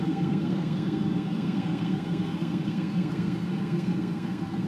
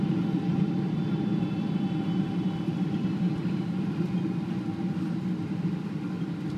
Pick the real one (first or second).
second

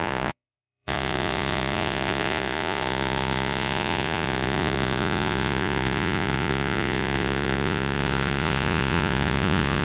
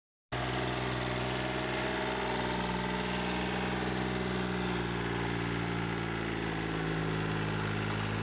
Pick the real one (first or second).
second